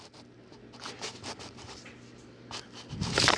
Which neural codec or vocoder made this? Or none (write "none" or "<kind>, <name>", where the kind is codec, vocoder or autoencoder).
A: none